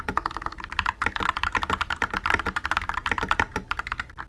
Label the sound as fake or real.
real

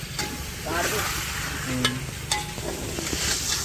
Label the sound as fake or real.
real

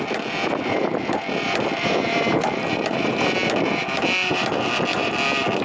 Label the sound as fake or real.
real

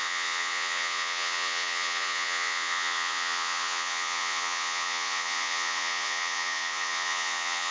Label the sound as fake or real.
fake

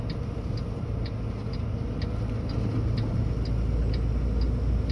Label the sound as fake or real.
real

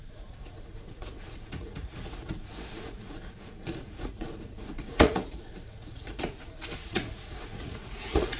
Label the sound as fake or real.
fake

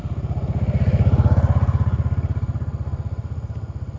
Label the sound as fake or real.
real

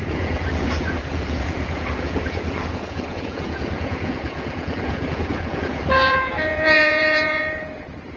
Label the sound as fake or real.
fake